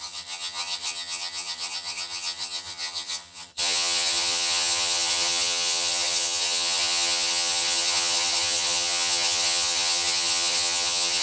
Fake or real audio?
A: fake